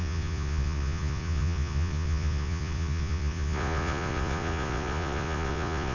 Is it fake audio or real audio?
fake